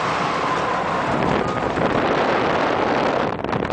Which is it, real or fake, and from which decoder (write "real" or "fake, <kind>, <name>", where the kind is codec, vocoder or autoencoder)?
real